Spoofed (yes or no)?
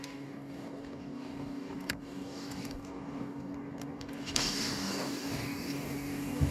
yes